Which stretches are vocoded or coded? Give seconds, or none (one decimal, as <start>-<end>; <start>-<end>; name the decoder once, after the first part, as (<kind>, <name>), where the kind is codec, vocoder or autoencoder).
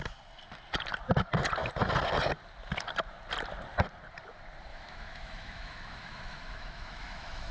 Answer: 4.7-7.5 (autoencoder, DAC-VAE)